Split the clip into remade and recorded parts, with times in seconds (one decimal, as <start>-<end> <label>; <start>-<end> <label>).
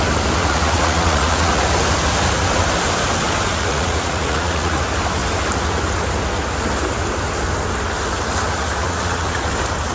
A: 0.0-0.4 recorded; 0.4-1.6 remade; 1.6-3.5 recorded; 3.5-4.8 remade; 4.8-8.8 recorded; 8.8-9.5 remade; 9.5-9.9 recorded